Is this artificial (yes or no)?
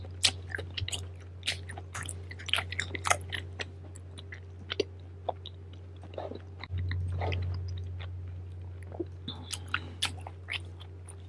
no